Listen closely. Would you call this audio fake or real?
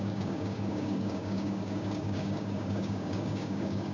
fake